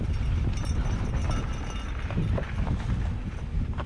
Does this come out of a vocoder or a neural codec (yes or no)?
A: no